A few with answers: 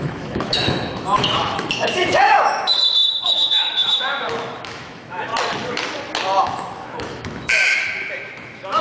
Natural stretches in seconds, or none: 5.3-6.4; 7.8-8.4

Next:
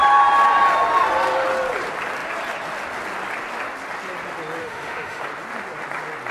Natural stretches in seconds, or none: 0.0-4.6; 5.2-6.3

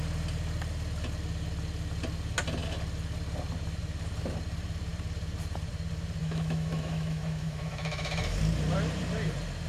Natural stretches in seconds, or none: 0.0-6.2; 8.4-9.7